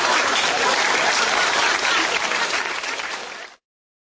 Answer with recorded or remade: recorded